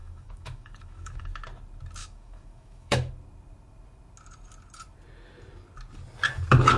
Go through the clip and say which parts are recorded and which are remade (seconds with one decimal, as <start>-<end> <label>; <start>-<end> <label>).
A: 0.0-1.2 remade; 1.2-2.0 recorded; 2.0-3.1 remade; 3.1-6.8 recorded